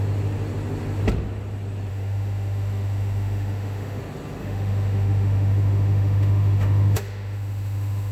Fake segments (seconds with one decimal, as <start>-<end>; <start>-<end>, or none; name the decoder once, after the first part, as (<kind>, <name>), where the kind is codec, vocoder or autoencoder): 1.9-4.0 (autoencoder, DAC-VAE); 4.4-8.1